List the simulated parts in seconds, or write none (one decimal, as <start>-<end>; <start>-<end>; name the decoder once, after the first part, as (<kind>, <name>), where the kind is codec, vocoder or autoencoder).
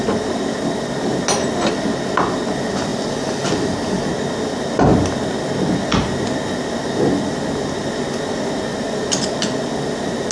none